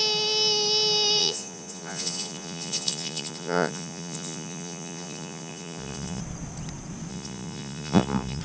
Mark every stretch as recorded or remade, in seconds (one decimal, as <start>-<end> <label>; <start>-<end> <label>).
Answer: 0.0-1.2 recorded; 1.2-6.2 remade; 6.2-7.1 recorded; 7.1-8.4 remade